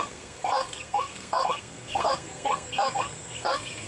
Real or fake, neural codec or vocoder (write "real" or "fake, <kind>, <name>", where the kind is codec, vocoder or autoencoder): fake, codec, SNAC